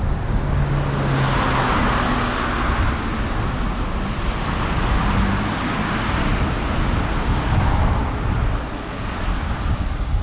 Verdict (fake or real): real